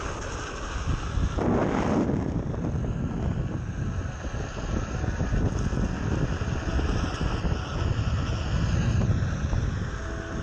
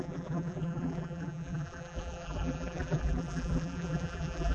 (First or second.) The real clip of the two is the first